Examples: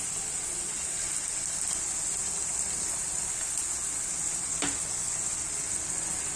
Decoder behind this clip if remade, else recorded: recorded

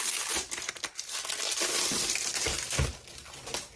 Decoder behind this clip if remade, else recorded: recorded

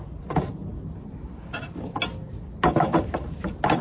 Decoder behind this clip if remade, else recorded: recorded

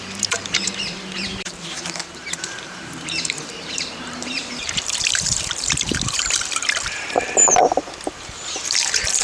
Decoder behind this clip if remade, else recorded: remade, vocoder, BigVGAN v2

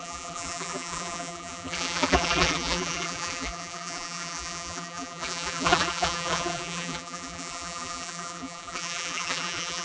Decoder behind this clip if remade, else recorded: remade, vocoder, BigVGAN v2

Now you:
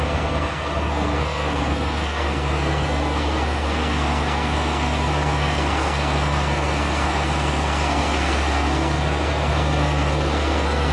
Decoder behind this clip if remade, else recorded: remade, codec, SNAC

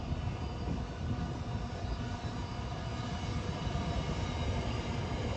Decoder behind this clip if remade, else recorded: recorded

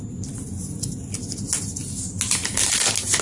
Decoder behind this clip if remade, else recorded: recorded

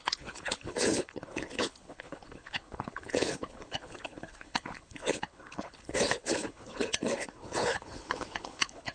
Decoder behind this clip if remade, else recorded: remade, codec, HILCodec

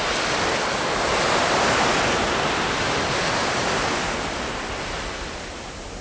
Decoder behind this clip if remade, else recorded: recorded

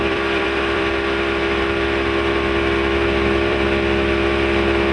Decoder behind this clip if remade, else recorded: remade, vocoder, BigVGAN v2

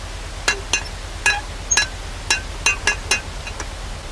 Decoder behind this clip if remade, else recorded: recorded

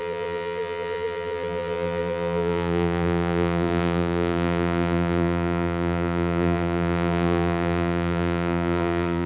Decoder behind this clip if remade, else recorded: remade, vocoder, BigVGAN v2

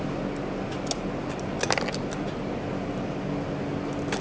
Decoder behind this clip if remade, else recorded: recorded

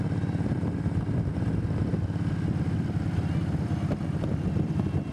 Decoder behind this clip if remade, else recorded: recorded